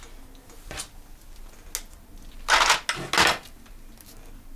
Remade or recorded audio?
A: recorded